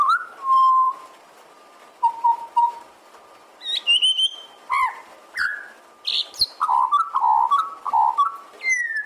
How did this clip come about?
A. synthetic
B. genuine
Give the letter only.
B